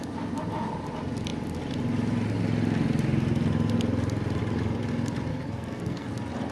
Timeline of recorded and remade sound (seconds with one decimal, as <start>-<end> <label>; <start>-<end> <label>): 0.0-5.3 recorded; 5.3-6.1 remade; 6.1-6.5 recorded